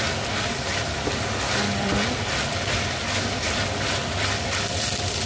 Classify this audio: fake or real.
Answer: real